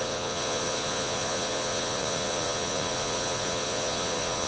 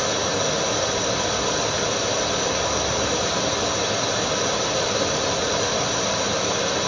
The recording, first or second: second